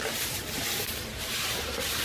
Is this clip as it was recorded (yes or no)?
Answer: no